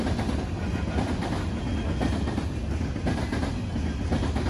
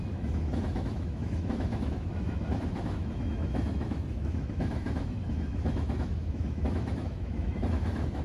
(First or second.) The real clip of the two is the first